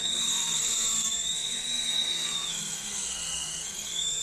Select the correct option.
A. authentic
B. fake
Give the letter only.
B